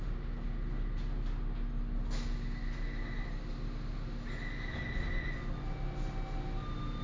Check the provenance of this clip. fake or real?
real